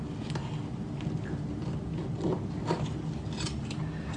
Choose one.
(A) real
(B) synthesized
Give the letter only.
A